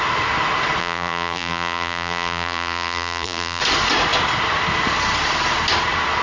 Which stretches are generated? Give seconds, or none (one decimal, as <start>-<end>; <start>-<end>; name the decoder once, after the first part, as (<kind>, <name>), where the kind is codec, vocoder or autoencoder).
0.8-3.6 (vocoder, BigVGAN v2)